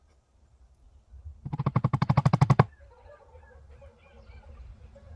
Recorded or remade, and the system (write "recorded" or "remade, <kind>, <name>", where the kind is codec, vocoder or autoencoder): remade, vocoder, BigVGAN v2